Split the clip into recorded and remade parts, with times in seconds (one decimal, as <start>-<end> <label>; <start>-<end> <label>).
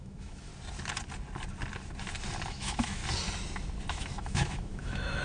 0.0-0.5 remade; 0.5-2.5 recorded; 2.5-3.0 remade; 3.0-3.9 recorded; 3.9-5.2 remade